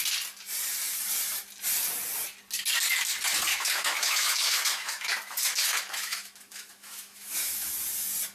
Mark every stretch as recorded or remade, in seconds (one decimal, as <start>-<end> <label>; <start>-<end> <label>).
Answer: 0.0-3.5 recorded; 3.5-7.7 remade; 7.7-8.3 recorded